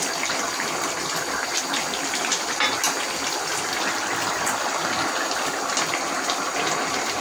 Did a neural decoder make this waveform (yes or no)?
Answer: no